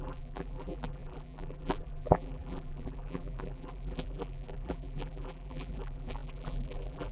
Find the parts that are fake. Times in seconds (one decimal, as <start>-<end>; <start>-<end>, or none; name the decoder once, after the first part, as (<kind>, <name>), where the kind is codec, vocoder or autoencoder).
0.0-7.1 (vocoder, BigVGAN v2)